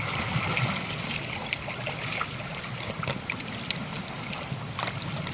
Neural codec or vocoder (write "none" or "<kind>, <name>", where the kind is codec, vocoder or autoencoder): none